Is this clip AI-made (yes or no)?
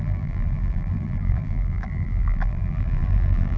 yes